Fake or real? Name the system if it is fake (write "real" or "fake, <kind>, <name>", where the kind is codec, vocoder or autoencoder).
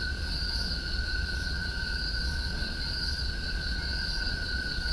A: fake, vocoder, Vocos